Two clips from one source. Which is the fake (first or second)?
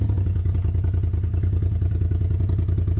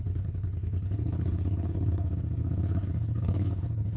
second